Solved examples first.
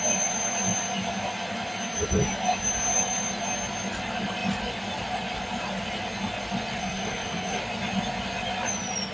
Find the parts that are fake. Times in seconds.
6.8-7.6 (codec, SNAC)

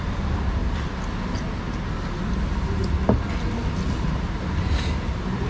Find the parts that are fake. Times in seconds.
0.0-0.6 (vocoder, BigVGAN v2); 3.9-5.5